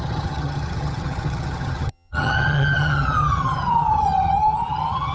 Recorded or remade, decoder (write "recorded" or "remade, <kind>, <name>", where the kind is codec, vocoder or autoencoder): remade, vocoder, HiFi-GAN